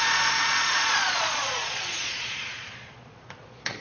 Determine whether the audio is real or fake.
fake